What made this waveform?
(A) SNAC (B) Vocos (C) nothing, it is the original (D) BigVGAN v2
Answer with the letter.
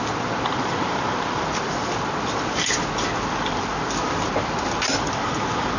C